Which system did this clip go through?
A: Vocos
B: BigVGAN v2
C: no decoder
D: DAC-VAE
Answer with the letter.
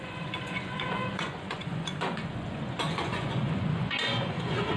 A